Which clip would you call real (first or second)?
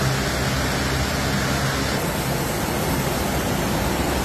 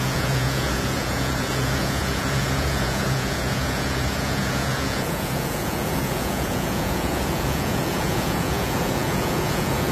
first